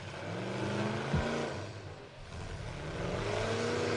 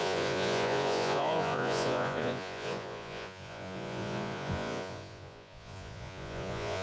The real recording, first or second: first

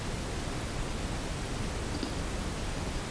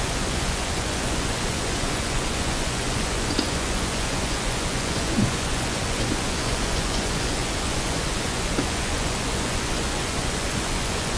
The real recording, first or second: first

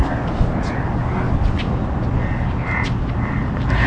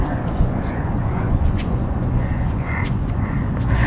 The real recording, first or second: first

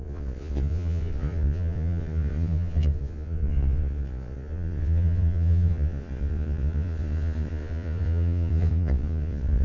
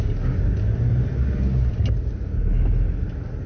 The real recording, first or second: second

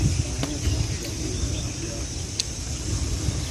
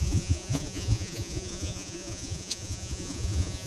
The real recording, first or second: first